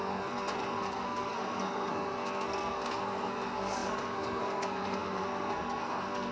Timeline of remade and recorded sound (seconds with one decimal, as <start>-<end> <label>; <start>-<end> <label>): 0.0-6.3 remade